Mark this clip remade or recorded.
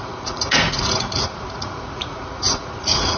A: remade